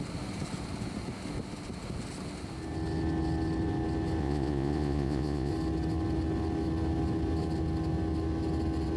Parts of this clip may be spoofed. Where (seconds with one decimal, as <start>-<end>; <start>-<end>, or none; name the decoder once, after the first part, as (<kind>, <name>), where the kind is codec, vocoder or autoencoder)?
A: 4.2-5.5 (vocoder, Vocos)